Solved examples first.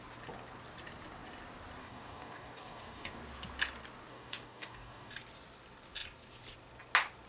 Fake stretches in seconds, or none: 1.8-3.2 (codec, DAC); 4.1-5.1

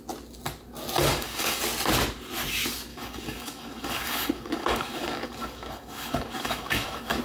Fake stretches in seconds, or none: 1.1-1.6 (codec, DAC); 2.9-7.2